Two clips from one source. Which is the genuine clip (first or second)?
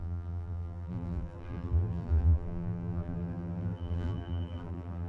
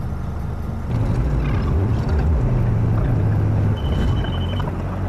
second